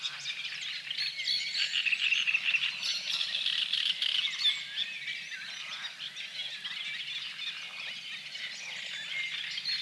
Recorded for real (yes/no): yes